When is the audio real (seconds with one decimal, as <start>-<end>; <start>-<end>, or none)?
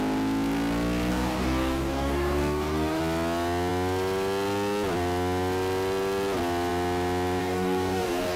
0.0-1.1; 3.0-7.4